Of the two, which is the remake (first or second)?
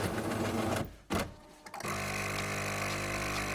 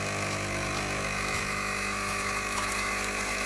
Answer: second